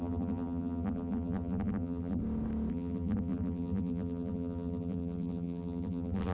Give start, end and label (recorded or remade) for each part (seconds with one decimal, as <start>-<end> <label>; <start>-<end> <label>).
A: 0.0-2.2 remade; 2.2-2.7 recorded; 2.7-6.3 remade